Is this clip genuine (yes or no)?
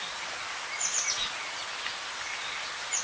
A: yes